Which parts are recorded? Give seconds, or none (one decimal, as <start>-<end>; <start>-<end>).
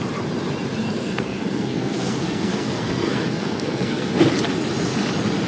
0.0-0.8; 4.1-5.5